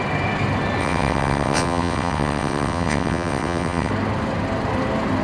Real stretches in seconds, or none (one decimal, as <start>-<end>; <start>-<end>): 0.0-0.8; 3.9-5.2